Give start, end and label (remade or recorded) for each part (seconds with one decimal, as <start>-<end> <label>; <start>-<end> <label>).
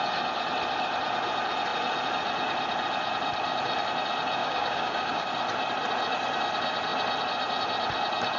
0.0-4.4 recorded; 4.4-5.3 remade; 5.3-8.4 recorded